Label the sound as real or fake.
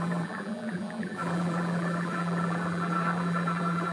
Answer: fake